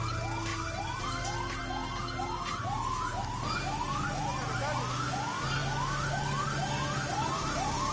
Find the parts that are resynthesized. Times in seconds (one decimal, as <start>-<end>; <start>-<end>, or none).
none